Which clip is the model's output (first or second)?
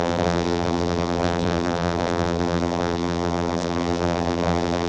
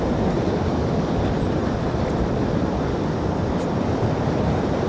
first